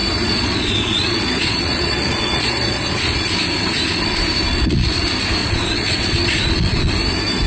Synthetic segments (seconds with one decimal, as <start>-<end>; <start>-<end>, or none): 0.0-3.2; 4.5-5.0; 5.4-6.9